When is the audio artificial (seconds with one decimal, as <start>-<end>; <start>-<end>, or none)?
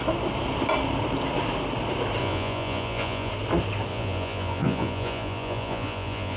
2.2-3.3; 3.9-6.4